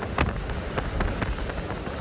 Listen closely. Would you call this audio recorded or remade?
recorded